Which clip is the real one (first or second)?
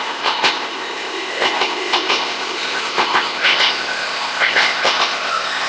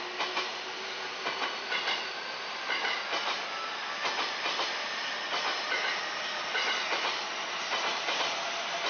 second